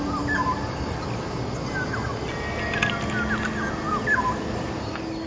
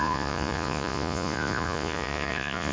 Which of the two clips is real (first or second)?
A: first